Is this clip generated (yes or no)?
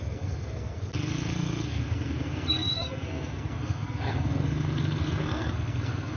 yes